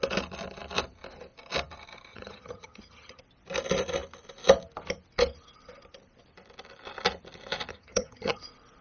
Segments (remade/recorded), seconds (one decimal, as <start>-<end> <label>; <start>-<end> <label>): 0.0-2.1 recorded; 2.1-3.2 remade; 3.2-7.7 recorded; 7.7-8.4 remade; 8.4-8.8 recorded